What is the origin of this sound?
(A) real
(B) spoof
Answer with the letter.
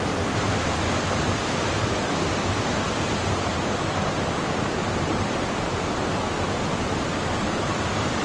A